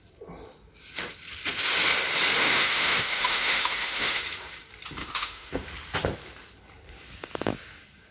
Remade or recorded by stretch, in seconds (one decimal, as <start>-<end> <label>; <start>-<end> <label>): 0.0-2.4 recorded; 2.4-4.2 remade; 4.2-5.0 recorded; 5.0-5.5 remade; 5.5-8.1 recorded